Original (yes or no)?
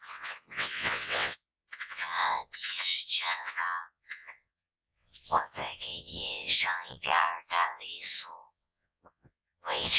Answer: no